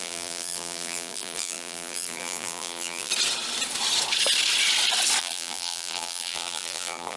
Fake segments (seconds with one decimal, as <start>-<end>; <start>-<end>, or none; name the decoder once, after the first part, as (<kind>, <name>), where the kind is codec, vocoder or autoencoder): 0.0-3.1 (vocoder, BigVGAN v2); 5.2-7.2